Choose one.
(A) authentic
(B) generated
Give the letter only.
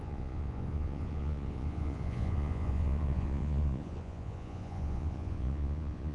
B